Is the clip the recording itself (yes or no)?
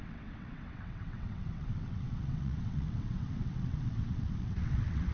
no